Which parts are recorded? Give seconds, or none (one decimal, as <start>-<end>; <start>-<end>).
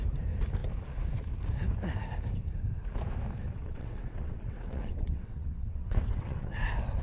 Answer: 0.0-3.6; 6.6-7.0